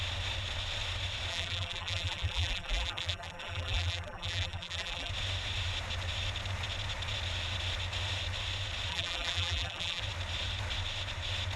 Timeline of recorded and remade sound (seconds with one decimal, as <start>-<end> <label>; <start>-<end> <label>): 0.0-1.3 recorded; 1.3-5.1 remade; 5.1-8.9 recorded; 8.9-10.0 remade; 10.0-11.6 recorded